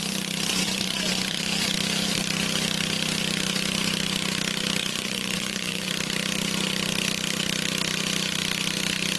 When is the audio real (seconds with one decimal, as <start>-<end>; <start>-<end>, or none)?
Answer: 0.0-0.5; 1.4-4.8; 5.9-9.2

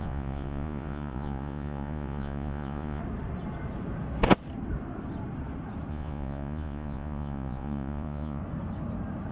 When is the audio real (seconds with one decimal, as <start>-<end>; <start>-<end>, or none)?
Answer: 3.0-5.9; 8.4-9.3

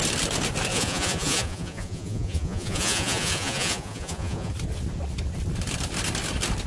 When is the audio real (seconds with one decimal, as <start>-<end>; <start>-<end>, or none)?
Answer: 0.0-0.7; 4.5-6.7

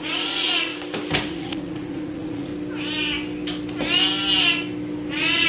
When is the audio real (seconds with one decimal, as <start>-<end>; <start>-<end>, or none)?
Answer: 0.7-1.3; 2.5-5.1

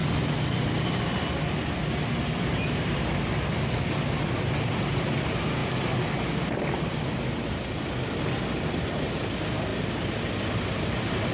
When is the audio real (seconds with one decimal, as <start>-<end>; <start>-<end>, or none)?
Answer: 0.0-11.3